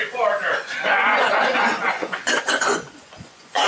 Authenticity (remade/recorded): remade